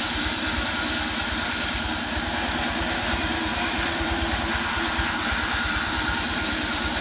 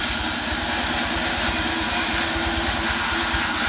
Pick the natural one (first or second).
second